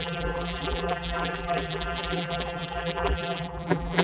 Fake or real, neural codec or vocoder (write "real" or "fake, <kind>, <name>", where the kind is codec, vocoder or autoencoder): fake, vocoder, BigVGAN v2